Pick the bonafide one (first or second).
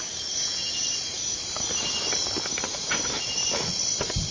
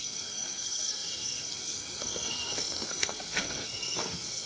first